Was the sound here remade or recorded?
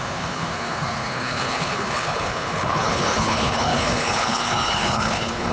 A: remade